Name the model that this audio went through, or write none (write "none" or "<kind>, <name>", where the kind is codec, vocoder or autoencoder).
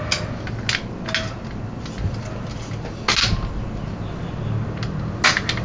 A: none